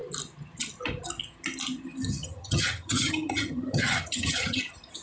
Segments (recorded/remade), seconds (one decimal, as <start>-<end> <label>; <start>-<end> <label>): 0.0-2.2 recorded; 2.2-4.6 remade; 4.6-5.0 recorded